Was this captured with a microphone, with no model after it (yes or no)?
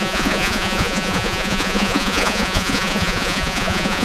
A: no